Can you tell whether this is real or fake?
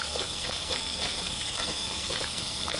fake